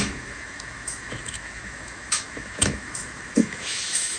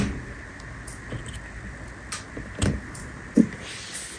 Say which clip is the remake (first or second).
first